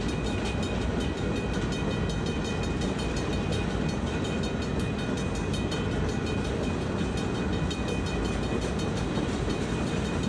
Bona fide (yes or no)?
yes